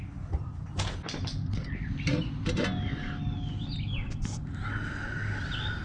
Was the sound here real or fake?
real